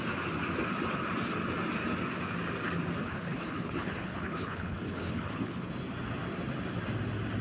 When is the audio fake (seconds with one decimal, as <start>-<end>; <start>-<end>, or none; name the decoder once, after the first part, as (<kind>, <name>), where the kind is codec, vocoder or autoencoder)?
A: 3.0-5.7 (codec, HILCodec)